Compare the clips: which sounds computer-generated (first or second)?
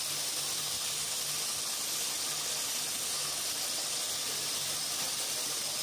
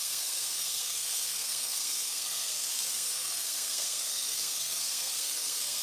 second